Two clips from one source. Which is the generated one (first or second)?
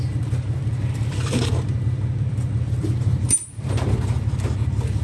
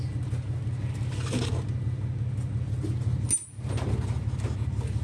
first